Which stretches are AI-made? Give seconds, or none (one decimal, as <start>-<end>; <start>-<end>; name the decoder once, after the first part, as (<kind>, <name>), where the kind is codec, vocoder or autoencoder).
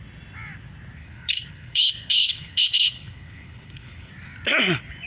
1.0-4.1 (codec, HILCodec)